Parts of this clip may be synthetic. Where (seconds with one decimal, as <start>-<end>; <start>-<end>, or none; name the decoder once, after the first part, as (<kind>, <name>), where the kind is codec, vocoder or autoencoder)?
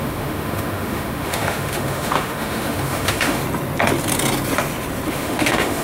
0.0-3.4 (autoencoder, DAC-VAE); 5.1-5.8